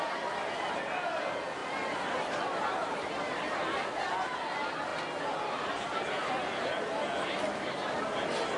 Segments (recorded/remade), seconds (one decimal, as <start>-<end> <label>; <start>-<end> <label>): 0.0-1.6 recorded; 1.6-2.1 remade; 2.1-2.8 recorded; 2.8-3.4 remade; 3.4-8.6 recorded